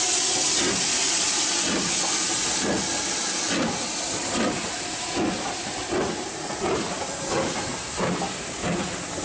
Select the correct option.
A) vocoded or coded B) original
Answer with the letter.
B